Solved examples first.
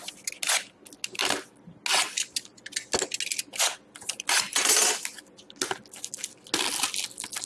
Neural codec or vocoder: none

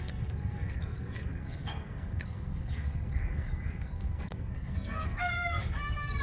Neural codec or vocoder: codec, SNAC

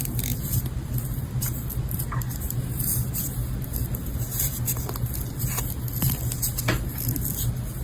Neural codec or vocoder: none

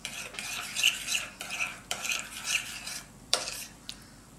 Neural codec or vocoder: vocoder, BigVGAN v2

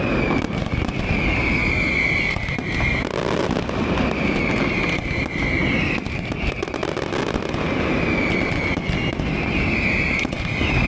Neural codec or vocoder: none